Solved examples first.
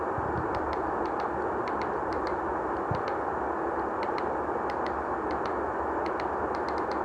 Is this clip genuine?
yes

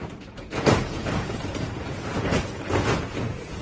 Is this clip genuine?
no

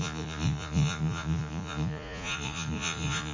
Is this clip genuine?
no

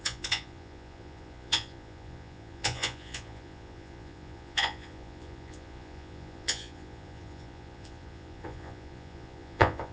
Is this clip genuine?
no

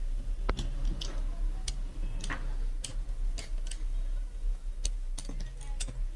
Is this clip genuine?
yes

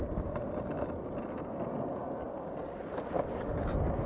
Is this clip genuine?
yes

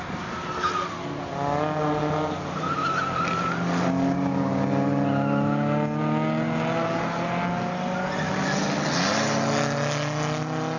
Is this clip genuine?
yes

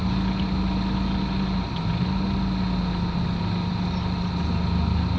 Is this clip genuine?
yes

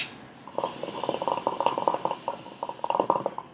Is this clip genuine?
yes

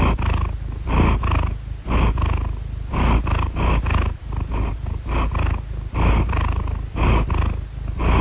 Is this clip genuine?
yes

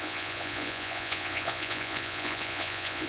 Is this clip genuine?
no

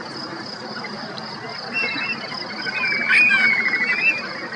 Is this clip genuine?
yes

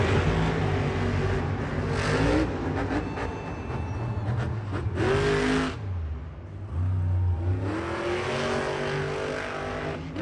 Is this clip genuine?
yes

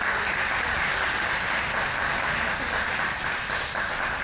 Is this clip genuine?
yes